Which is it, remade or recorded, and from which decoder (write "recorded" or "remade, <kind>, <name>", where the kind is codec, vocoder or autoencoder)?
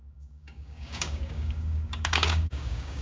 remade, codec, DAC